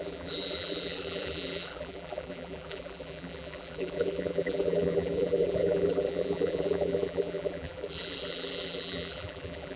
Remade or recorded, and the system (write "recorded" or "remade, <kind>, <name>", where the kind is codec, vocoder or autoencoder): remade, vocoder, BigVGAN v2